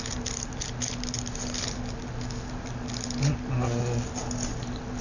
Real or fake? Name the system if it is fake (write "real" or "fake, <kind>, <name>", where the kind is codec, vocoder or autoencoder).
real